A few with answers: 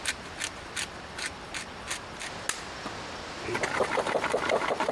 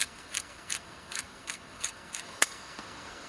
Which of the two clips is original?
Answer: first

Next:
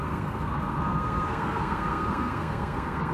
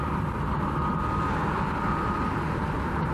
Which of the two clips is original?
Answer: second